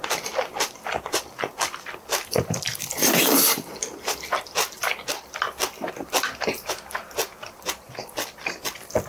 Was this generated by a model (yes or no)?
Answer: yes